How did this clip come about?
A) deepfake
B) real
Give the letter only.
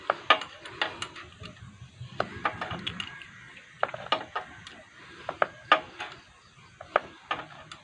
B